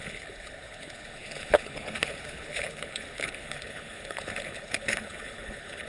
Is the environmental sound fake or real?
fake